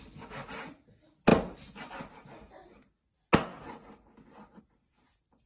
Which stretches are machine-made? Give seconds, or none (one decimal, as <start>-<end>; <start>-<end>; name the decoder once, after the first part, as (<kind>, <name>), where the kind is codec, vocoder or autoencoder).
none